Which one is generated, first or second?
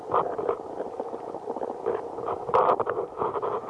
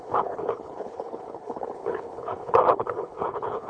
second